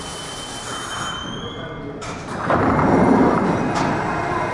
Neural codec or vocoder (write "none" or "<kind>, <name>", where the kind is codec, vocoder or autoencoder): none